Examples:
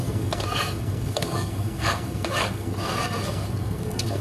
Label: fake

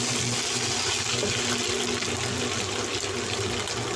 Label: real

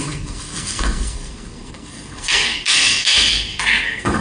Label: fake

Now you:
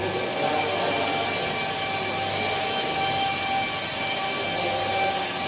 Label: real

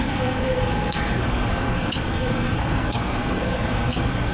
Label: fake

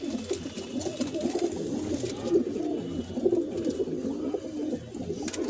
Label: real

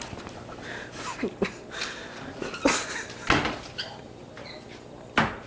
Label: real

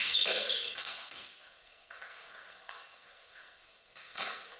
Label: fake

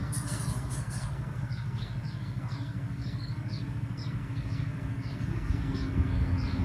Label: fake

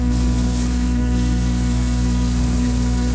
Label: fake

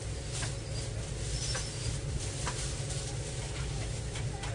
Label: real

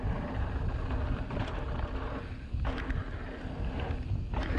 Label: real